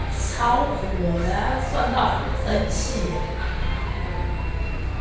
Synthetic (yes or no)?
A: no